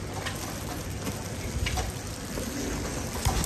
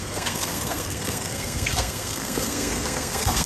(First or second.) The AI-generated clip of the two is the second